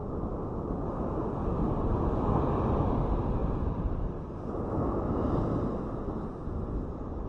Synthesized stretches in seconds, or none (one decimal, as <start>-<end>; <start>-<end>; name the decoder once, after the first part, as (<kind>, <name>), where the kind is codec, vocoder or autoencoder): none